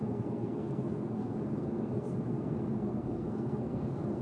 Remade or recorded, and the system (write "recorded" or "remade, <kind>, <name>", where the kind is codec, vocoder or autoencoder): remade, codec, SNAC